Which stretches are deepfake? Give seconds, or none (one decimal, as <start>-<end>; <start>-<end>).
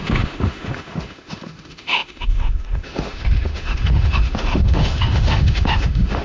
0.0-6.2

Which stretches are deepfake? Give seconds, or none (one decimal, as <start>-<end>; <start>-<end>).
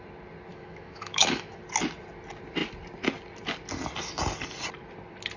0.5-1.6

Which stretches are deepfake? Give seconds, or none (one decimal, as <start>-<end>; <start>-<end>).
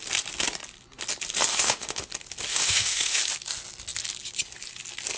1.5-2.1; 2.5-3.2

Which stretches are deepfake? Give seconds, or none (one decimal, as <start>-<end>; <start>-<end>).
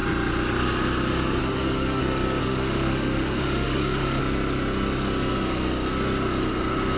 1.4-2.0; 2.4-4.2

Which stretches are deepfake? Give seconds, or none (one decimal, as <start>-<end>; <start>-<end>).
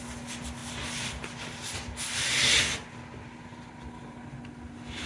none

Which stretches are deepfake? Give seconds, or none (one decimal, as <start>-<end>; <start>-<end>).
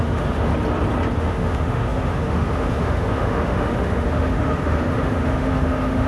0.0-0.5; 1.2-6.1